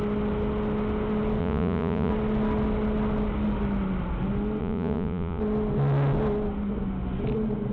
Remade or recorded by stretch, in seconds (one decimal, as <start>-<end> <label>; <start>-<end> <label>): 0.0-1.4 recorded; 1.4-2.1 remade; 2.1-4.6 recorded; 4.6-5.4 remade; 5.4-7.7 recorded